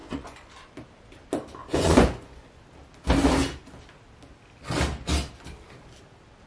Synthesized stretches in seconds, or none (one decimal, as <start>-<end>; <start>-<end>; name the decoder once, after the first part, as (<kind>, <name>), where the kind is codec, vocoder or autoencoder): 0.0-0.7 (vocoder, Vocos); 1.6-2.6